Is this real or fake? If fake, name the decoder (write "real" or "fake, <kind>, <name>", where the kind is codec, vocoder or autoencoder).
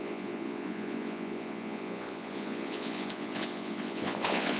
fake, vocoder, Vocos